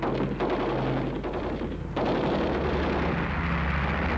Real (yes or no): yes